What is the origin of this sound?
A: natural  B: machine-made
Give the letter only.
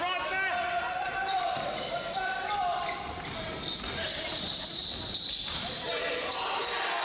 A